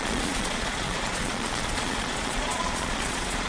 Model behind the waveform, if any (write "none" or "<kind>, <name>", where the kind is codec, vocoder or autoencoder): vocoder, Vocos